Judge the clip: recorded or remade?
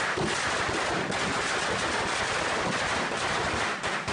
recorded